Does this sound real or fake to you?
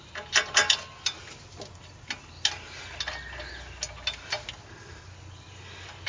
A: real